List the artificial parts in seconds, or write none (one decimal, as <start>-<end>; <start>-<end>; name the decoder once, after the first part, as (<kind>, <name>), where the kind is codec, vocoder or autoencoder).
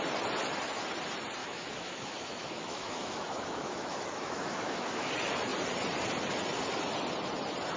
1.4-5.1 (autoencoder, DAC-VAE)